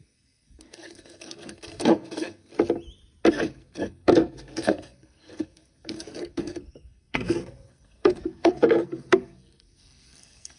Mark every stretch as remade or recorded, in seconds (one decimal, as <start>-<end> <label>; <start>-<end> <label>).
0.0-2.5 remade; 2.5-3.3 recorded; 3.3-10.6 remade